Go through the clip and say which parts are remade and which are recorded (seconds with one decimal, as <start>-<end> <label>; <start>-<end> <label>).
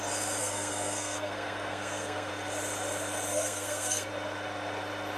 0.0-0.4 recorded; 0.4-2.3 remade; 2.3-3.3 recorded; 3.3-4.1 remade; 4.1-5.2 recorded